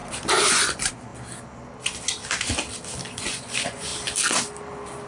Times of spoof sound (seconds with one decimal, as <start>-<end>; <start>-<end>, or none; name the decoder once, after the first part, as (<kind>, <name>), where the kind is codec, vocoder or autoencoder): 0.5-1.1 (vocoder, Vocos); 3.1-3.9